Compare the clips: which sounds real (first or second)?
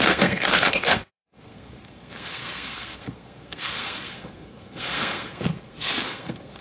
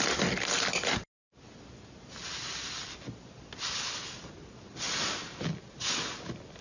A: second